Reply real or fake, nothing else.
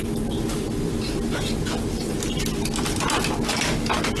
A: real